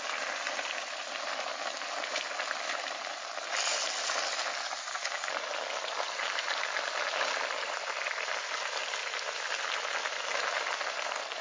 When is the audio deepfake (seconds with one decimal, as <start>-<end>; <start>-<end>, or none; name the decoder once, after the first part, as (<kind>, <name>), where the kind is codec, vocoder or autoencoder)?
none